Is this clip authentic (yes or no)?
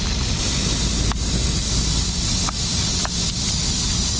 yes